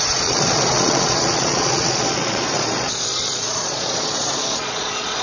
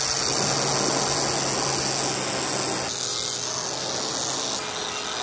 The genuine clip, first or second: second